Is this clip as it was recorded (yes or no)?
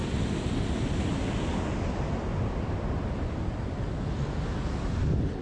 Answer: yes